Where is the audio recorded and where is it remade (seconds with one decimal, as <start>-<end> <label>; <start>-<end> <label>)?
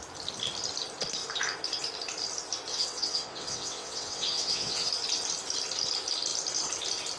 0.0-2.7 recorded; 2.7-4.9 remade; 4.9-7.2 recorded